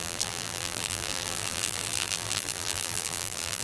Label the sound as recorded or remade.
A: remade